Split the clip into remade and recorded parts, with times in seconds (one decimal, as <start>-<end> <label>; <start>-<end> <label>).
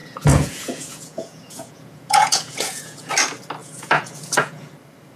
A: 0.0-3.1 remade; 3.1-3.6 recorded; 3.6-4.7 remade; 4.7-5.2 recorded